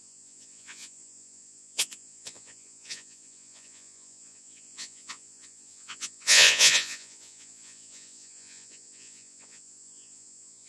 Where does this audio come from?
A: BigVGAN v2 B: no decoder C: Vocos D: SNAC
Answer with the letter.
C